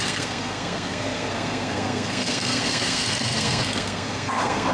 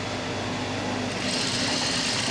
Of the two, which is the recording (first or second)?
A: second